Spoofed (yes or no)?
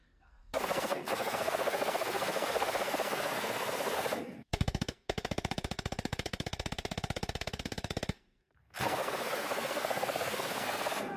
yes